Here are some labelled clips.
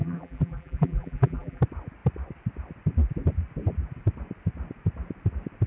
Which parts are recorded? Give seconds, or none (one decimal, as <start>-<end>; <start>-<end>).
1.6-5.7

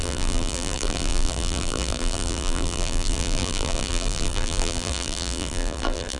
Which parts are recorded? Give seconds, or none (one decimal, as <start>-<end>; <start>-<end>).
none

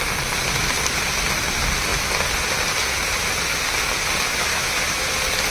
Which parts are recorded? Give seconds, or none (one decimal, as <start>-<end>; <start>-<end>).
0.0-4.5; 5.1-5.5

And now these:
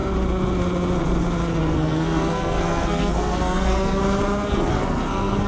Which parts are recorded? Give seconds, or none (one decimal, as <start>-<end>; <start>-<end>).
0.0-1.6; 4.0-4.7